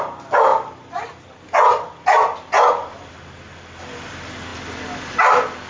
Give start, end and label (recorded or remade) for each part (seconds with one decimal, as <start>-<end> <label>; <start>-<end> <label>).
0.0-5.7 recorded